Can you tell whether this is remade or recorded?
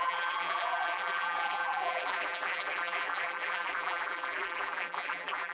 remade